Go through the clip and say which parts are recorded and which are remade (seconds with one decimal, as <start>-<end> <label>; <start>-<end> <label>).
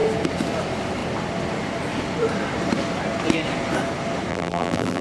0.0-4.3 recorded; 4.3-5.0 remade